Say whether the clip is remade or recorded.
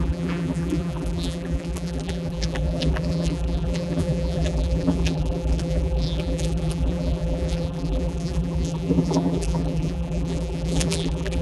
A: remade